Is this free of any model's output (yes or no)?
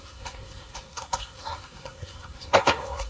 no